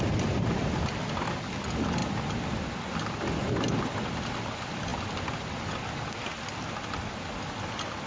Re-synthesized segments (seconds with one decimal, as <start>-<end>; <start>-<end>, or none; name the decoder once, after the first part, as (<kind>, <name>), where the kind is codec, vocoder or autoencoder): none